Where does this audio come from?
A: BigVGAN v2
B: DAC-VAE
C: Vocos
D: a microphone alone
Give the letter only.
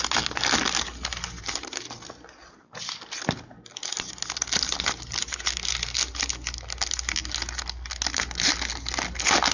D